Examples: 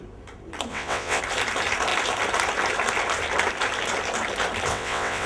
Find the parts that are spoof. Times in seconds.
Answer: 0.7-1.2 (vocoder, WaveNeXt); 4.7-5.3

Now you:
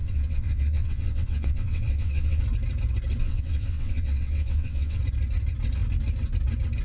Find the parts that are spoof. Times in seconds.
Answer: 0.0-2.4 (vocoder, WaveNeXt); 3.2-5.0

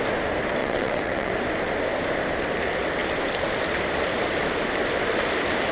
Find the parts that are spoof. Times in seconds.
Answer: 0.6-1.3 (vocoder, WaveNeXt)